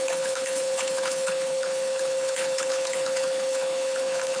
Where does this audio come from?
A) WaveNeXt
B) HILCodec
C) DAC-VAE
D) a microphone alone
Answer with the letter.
B